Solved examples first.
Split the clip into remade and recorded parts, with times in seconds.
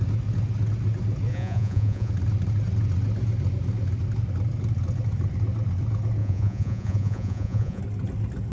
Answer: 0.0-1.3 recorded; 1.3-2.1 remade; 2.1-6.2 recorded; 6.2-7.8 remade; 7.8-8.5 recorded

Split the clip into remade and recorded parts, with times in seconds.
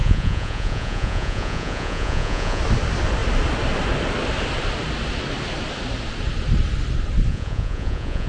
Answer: 0.0-2.6 remade; 2.6-7.3 recorded; 7.3-8.3 remade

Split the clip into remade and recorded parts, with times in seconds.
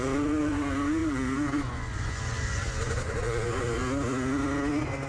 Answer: 0.0-3.8 remade; 3.8-5.1 recorded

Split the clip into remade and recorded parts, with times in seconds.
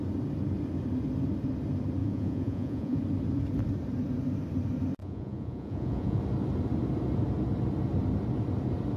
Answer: 0.0-2.0 recorded; 2.0-3.0 remade; 3.0-5.0 recorded; 5.0-6.2 remade; 6.2-9.0 recorded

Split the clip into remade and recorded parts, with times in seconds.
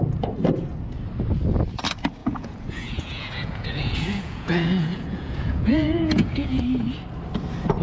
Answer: 0.0-2.2 recorded; 2.2-6.6 remade; 6.6-7.8 recorded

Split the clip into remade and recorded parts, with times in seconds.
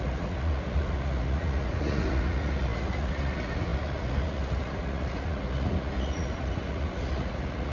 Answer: 0.0-7.7 remade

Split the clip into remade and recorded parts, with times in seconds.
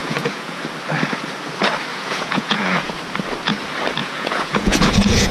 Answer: 0.0-0.6 remade; 0.6-1.9 recorded; 1.9-2.9 remade; 2.9-4.0 recorded; 4.0-5.3 remade